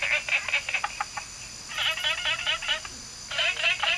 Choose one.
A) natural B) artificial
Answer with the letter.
A